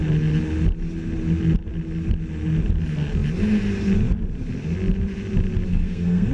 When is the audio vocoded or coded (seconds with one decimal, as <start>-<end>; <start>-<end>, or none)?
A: 5.7-6.3